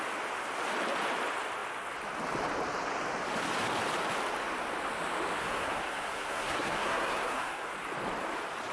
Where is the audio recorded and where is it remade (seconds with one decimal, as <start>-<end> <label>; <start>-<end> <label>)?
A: 0.0-5.4 recorded; 5.4-7.7 remade; 7.7-8.7 recorded